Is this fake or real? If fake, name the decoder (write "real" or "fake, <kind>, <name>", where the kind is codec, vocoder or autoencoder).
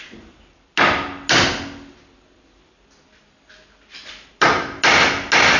real